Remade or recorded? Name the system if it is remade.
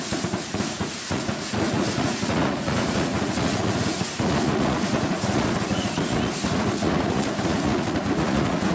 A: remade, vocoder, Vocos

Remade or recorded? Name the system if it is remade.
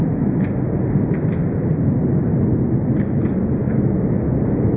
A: recorded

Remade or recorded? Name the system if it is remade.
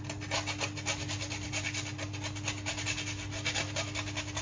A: recorded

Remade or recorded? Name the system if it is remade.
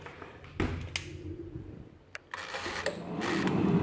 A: recorded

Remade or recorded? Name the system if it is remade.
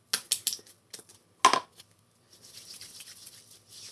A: recorded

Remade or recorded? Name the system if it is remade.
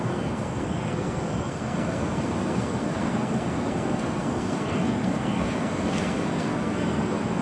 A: remade, codec, SNAC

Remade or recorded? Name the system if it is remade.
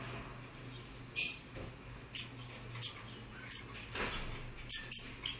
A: recorded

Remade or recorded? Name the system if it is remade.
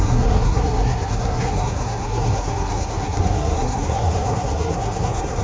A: remade, codec, SNAC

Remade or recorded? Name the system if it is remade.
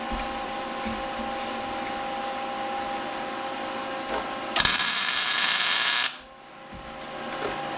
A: recorded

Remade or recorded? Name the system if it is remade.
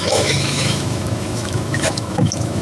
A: remade, autoencoder, DAC-VAE